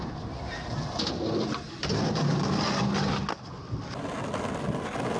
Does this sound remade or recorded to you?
recorded